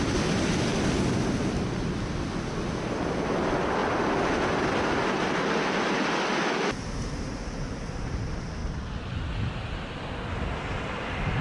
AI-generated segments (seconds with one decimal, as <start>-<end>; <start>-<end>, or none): none